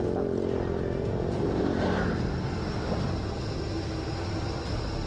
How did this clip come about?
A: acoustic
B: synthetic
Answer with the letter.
A